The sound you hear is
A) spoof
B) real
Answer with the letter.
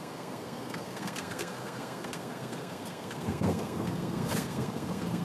A